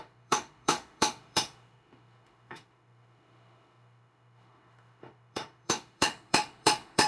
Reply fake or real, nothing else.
fake